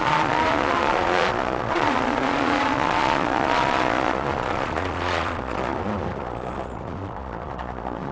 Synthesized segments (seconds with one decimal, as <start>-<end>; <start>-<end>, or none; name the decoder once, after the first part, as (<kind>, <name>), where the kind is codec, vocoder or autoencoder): 0.0-8.1 (vocoder, Vocos)